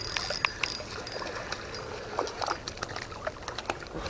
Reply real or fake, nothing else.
real